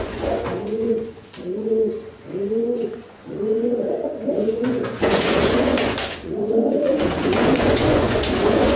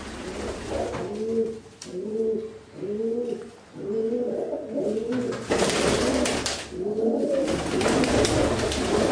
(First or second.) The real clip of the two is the second